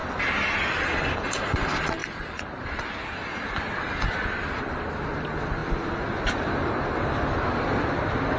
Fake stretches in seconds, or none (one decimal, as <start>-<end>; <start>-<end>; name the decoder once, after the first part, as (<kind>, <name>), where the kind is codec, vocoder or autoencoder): 2.0-2.8 (vocoder, BigVGAN v2)